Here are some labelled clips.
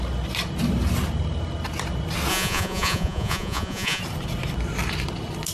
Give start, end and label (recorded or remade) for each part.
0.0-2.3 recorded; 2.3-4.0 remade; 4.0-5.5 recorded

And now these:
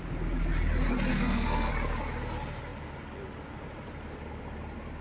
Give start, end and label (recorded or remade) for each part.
0.0-1.1 recorded; 1.1-1.7 remade; 1.7-5.0 recorded

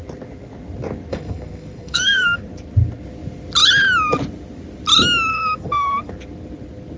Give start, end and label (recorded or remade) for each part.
0.0-1.1 recorded; 1.1-2.4 remade; 2.4-5.3 recorded; 5.3-6.1 remade; 6.1-7.0 recorded